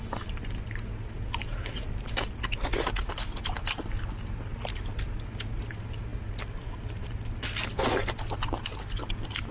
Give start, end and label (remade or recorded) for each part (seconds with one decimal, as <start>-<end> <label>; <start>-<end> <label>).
0.0-1.5 recorded; 1.5-2.1 remade; 2.1-9.5 recorded